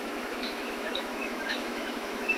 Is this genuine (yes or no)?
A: no